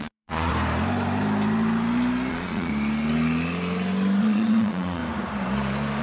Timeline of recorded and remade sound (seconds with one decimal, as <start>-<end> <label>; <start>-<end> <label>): 0.0-0.5 remade; 0.5-2.3 recorded; 2.3-2.7 remade; 2.7-4.2 recorded; 4.2-5.0 remade; 5.0-6.0 recorded